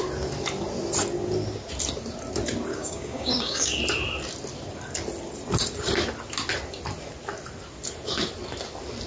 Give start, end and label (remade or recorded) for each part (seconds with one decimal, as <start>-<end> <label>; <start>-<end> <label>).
0.0-2.7 recorded; 2.7-3.8 remade; 3.8-9.1 recorded